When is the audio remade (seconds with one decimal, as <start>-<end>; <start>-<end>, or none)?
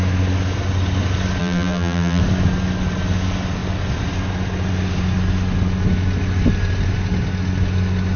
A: 1.4-2.2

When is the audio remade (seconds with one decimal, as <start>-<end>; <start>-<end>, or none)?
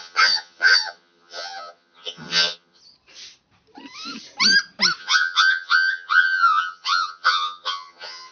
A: 0.0-2.8; 5.0-8.3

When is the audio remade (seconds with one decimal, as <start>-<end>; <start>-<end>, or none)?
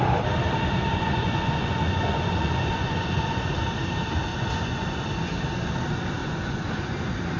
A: 0.9-3.7; 4.3-5.3; 6.2-6.7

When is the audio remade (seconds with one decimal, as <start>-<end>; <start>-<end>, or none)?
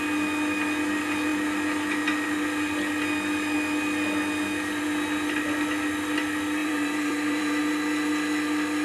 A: 6.6-7.6